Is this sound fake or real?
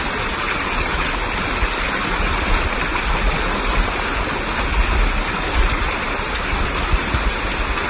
real